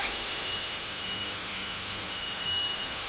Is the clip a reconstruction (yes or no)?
yes